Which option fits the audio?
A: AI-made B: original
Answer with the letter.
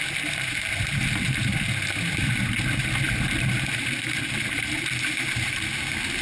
B